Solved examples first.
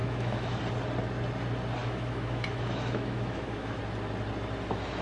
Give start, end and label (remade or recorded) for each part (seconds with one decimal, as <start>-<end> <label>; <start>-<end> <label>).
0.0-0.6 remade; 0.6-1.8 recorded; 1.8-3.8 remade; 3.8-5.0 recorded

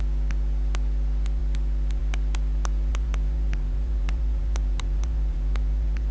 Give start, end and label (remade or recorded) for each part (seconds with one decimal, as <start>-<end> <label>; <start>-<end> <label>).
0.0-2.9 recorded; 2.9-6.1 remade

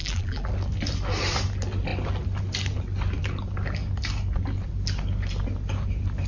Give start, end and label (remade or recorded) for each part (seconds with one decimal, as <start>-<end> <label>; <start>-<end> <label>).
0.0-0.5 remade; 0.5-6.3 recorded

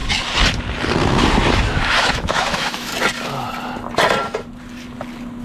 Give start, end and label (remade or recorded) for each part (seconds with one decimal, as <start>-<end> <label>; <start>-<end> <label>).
0.0-2.1 recorded; 2.1-2.9 remade; 2.9-5.4 recorded